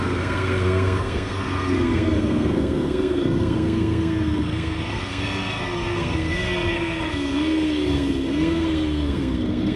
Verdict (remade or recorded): remade